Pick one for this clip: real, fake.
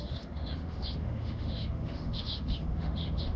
fake